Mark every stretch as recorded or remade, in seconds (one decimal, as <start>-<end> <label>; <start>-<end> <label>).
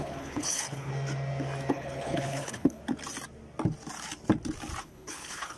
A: 0.0-0.9 remade; 0.9-1.7 recorded; 1.7-2.8 remade; 2.8-4.8 recorded; 4.8-5.6 remade